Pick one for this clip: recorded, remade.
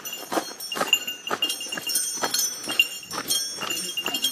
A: recorded